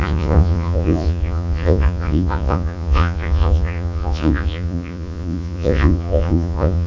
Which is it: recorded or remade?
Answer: remade